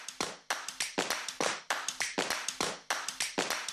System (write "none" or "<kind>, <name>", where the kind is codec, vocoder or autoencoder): none